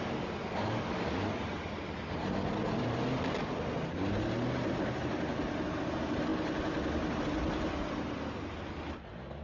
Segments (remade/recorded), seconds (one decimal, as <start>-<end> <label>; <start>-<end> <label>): 0.0-9.4 recorded

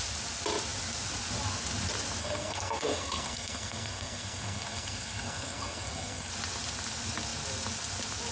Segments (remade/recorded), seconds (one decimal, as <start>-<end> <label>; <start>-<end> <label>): 0.0-2.2 recorded; 2.2-6.3 remade; 6.3-8.3 recorded

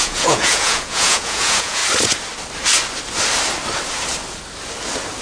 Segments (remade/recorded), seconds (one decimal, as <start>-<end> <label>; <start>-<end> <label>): 0.0-1.8 remade; 1.8-5.2 recorded